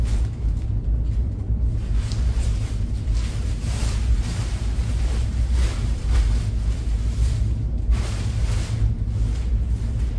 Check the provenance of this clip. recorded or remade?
recorded